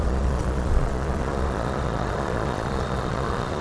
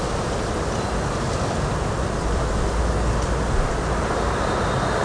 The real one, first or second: second